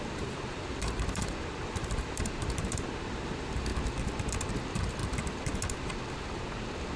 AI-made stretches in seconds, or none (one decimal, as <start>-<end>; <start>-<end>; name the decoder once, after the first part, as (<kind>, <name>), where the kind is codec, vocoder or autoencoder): 0.0-3.7 (vocoder, BigVGAN v2); 4.5-5.0

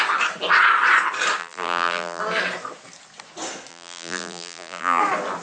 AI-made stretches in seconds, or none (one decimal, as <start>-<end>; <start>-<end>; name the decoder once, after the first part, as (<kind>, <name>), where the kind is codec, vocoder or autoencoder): 1.4-2.2 (vocoder, BigVGAN v2); 3.7-5.0

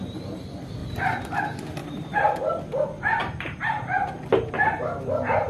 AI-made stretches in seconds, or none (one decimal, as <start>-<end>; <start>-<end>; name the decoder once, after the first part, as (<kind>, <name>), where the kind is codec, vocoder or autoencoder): 0.8-1.4 (vocoder, BigVGAN v2); 1.8-2.6; 3.2-4.1

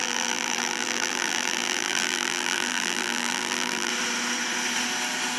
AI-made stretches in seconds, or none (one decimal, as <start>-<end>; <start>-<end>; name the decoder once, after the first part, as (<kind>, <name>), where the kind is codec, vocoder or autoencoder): 0.0-3.9 (vocoder, BigVGAN v2)

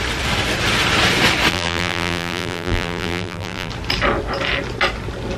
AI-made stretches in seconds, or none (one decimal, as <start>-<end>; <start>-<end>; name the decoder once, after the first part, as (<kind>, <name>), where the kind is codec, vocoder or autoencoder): 1.5-3.7 (vocoder, BigVGAN v2)

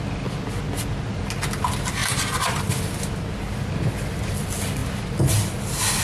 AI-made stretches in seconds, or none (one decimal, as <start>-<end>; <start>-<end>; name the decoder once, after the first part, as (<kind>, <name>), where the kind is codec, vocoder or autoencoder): 2.0-2.9 (vocoder, BigVGAN v2); 4.8-6.0

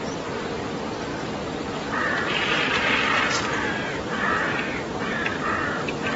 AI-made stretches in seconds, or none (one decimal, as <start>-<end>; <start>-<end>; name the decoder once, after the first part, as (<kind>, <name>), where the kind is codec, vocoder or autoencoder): 1.1-4.8 (vocoder, BigVGAN v2)

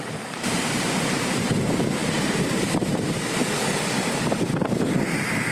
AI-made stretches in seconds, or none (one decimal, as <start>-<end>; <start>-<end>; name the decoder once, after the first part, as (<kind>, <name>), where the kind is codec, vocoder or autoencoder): 0.0-3.4 (vocoder, BigVGAN v2)